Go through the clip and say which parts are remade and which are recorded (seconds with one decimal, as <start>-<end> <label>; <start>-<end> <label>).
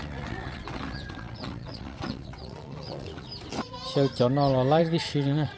0.0-3.3 remade; 3.3-4.8 recorded; 4.8-5.6 remade